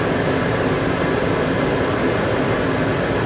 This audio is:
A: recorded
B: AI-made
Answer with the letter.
A